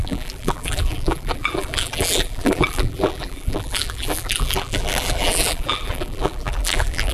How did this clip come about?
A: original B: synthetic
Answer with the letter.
B